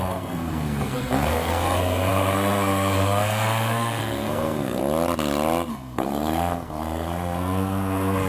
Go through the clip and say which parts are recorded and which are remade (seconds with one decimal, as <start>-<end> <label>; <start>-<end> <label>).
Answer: 0.0-4.8 remade; 4.8-5.7 recorded; 5.7-8.3 remade